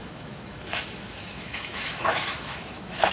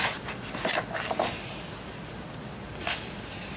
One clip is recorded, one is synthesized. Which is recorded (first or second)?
second